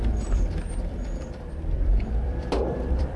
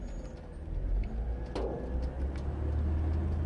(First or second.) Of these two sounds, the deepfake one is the first